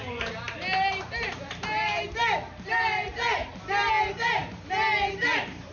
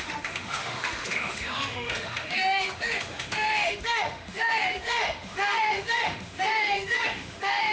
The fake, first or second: second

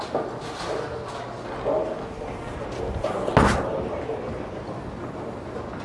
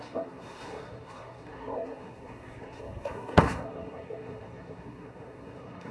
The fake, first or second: second